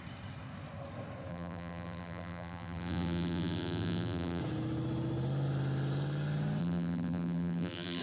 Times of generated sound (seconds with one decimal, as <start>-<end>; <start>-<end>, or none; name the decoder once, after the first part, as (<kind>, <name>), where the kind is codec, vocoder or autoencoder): 1.3-4.4 (vocoder, BigVGAN v2); 6.6-8.0